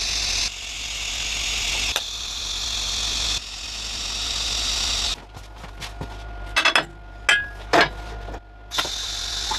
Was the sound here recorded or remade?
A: recorded